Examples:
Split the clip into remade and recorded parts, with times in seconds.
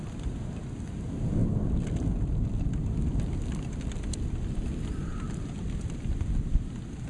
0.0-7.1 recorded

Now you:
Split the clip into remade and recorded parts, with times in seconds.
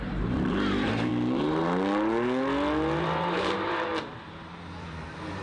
0.0-1.1 remade; 1.1-3.0 recorded; 3.0-3.9 remade; 3.9-4.8 recorded; 4.8-5.4 remade